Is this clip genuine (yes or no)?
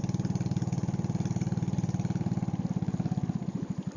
yes